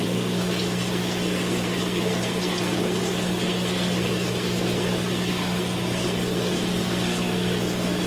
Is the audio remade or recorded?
remade